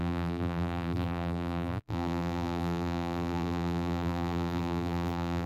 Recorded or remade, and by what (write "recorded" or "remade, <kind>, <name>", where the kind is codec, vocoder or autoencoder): remade, vocoder, BigVGAN v2